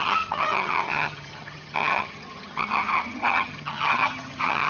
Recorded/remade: remade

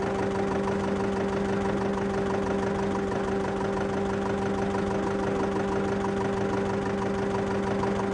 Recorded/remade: recorded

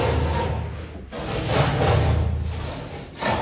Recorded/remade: recorded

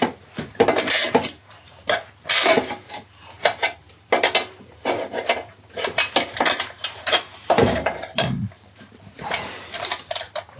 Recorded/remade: remade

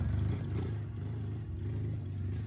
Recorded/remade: recorded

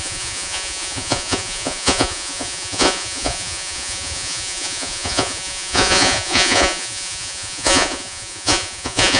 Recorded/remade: remade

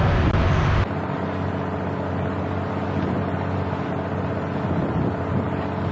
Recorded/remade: recorded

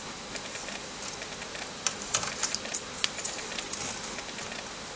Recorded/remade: recorded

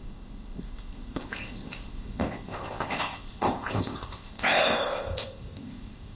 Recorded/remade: remade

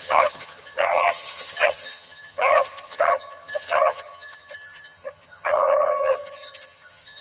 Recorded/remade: remade